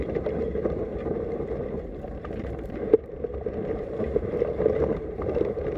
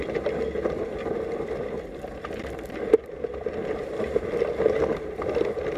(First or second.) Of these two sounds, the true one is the second